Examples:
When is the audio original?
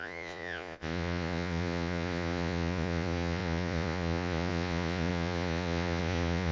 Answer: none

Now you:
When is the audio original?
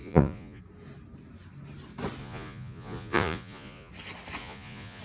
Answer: 0.6-2.2; 3.9-4.4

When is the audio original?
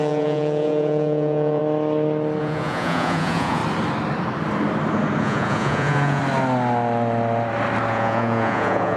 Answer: 1.6-2.4; 3.6-5.2; 6.2-7.9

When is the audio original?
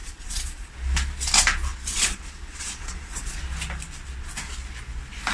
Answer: 0.7-1.7; 3.4-5.3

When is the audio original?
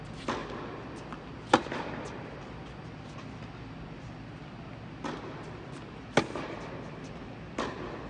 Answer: 0.0-8.1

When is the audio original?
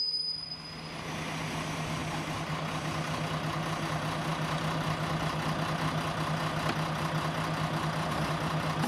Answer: 0.0-8.9